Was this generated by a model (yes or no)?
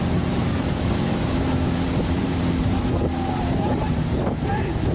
yes